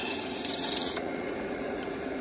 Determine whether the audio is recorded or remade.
remade